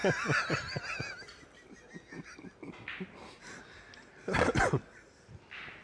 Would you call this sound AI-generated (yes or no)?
no